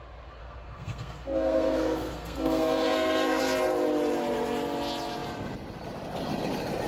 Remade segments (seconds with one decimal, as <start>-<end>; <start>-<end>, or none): 0.4-3.4